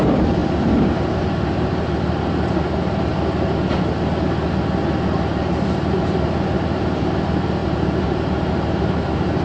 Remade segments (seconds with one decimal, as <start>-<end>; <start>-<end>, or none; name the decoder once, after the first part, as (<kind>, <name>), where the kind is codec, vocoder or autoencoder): 0.0-3.1 (vocoder, BigVGAN v2); 5.1-9.4